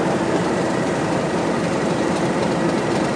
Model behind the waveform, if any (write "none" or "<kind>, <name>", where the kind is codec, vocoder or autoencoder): vocoder, BigVGAN v2